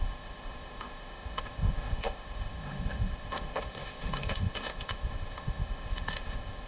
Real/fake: fake